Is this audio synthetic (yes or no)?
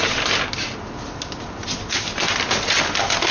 no